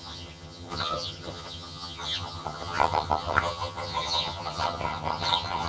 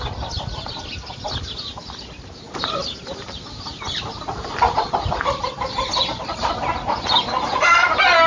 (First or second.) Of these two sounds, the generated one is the first